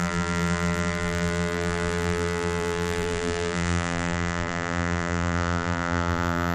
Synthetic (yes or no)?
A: yes